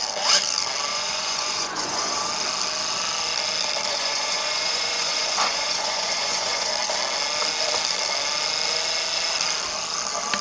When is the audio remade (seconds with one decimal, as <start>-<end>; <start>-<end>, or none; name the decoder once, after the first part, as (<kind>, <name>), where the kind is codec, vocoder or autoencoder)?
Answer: 0.9-2.3 (vocoder, Vocos); 3.9-6.7